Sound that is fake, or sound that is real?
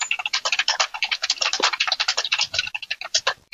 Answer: fake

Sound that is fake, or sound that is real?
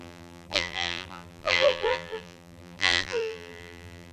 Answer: fake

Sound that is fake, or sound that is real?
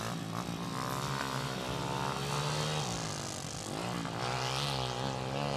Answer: real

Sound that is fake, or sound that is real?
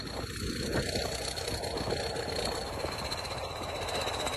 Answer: real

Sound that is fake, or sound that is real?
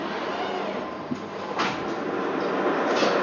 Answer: real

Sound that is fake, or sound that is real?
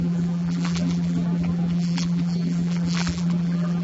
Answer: fake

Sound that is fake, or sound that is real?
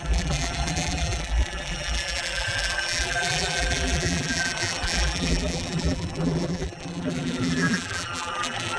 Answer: fake